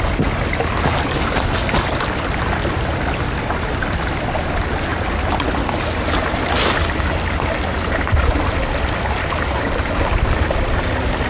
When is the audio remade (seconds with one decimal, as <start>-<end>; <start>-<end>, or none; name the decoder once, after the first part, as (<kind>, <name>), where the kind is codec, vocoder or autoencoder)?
none